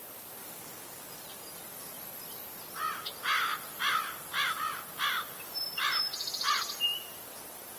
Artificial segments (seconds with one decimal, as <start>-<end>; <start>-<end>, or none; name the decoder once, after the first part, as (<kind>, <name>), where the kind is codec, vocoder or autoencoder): none